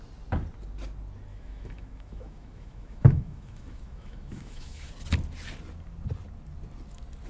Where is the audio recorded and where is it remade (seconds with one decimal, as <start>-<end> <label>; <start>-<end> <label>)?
0.0-1.3 recorded; 1.3-4.9 remade; 4.9-7.3 recorded